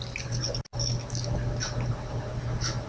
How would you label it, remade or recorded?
recorded